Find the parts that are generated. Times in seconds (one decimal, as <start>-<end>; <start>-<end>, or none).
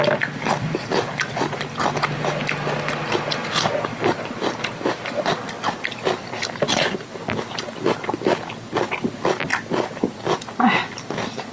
3.9-5.5